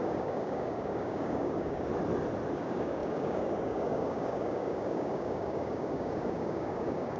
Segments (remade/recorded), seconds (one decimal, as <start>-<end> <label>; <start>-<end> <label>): 0.0-1.9 remade; 1.9-2.5 recorded; 2.5-7.2 remade